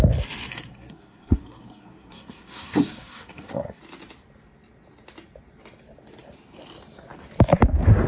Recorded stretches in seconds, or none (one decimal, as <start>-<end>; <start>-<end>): 0.0-0.5; 3.8-8.1